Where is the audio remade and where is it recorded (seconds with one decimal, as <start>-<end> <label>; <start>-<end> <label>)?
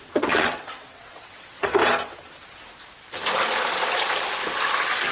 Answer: 0.0-1.8 remade; 1.8-5.1 recorded